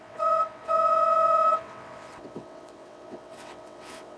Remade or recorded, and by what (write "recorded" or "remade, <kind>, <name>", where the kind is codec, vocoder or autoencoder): remade, vocoder, WaveNeXt